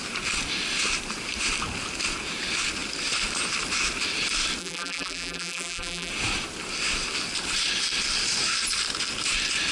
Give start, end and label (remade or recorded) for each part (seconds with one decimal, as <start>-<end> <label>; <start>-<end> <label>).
0.0-4.6 recorded; 4.6-6.1 remade; 6.1-9.7 recorded